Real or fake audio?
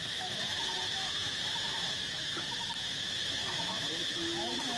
fake